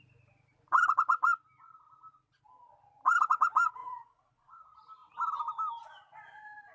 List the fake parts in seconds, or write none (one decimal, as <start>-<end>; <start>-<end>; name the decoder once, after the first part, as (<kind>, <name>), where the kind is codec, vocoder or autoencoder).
3.8-4.6 (vocoder, Vocos)